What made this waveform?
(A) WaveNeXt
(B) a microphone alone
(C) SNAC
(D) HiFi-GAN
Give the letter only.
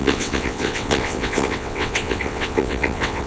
A